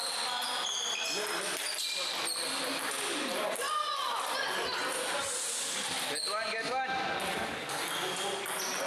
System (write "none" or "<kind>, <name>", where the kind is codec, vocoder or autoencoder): none